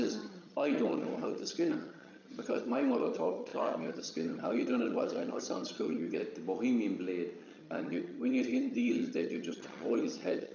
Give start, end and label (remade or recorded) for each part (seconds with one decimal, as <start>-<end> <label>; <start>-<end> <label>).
0.0-6.2 remade; 6.2-7.4 recorded; 7.4-10.5 remade